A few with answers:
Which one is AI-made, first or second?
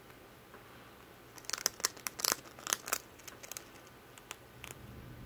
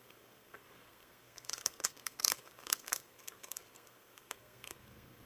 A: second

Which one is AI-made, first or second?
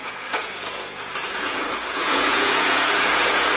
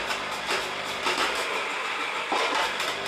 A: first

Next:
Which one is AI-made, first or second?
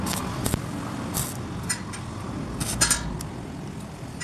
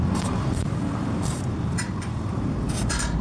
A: second